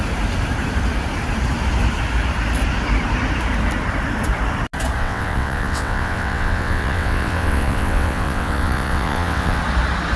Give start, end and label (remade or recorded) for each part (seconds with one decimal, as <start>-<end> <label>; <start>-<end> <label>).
0.0-5.0 recorded; 5.0-9.6 remade; 9.6-10.2 recorded